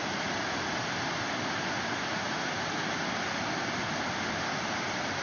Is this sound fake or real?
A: real